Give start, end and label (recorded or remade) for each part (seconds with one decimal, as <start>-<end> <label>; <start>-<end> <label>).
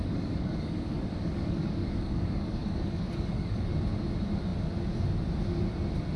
0.0-3.7 remade; 3.7-6.2 recorded